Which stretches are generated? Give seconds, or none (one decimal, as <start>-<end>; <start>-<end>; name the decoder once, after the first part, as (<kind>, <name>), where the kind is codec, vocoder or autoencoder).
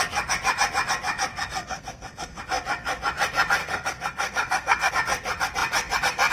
1.3-2.4 (codec, SNAC); 3.6-4.9